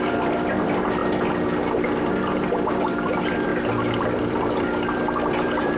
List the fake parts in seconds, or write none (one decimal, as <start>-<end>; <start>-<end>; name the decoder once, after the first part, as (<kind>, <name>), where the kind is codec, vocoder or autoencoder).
0.0-1.0 (vocoder, BigVGAN v2); 2.7-3.5; 4.0-5.8

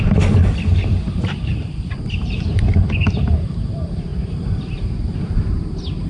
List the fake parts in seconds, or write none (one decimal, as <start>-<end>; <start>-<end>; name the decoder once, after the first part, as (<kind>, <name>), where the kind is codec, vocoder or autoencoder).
0.8-2.9 (vocoder, BigVGAN v2); 4.1-6.1